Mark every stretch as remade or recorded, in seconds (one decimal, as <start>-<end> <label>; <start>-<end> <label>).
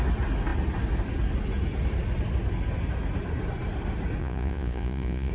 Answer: 0.0-4.2 recorded; 4.2-5.3 remade